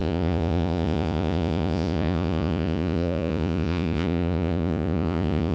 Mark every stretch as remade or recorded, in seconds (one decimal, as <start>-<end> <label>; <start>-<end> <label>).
0.0-5.5 remade